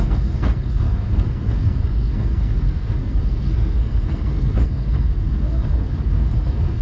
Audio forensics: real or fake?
fake